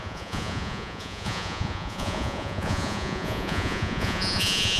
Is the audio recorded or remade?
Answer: remade